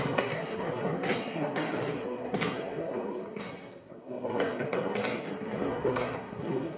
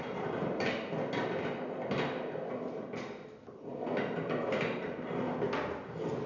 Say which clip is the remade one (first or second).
first